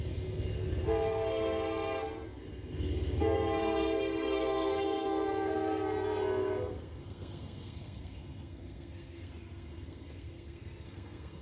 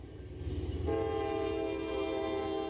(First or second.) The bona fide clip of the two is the second